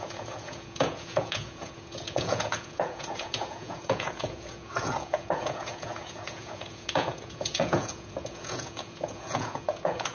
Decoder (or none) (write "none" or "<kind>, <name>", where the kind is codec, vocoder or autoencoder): vocoder, Vocos